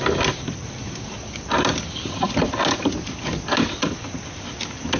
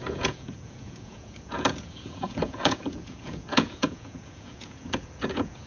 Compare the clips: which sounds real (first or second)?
first